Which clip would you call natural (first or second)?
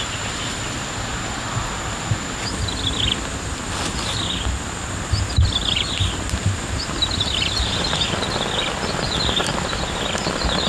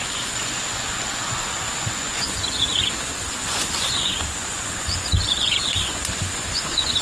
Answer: first